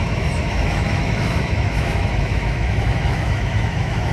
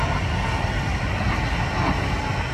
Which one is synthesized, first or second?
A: first